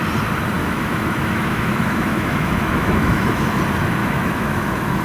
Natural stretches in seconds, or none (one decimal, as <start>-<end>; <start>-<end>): 0.0-0.6; 3.6-4.0

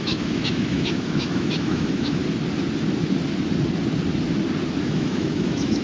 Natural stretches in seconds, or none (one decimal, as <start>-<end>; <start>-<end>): 2.2-4.8